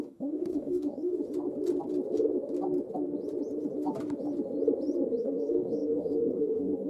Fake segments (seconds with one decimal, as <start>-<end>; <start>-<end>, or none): 0.0-1.1; 5.2-6.9